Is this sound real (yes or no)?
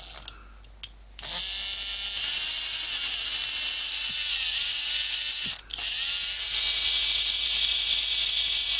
yes